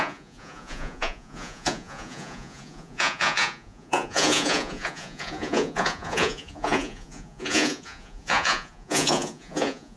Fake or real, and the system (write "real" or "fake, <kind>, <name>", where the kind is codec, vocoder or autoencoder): fake, vocoder, Vocos